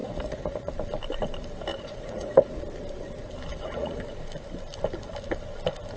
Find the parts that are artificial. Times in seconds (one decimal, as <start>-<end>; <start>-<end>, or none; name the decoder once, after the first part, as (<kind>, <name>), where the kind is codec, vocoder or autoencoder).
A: 0.0-0.7 (vocoder, Vocos); 1.7-2.6; 3.5-4.0